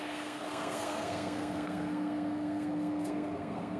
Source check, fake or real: fake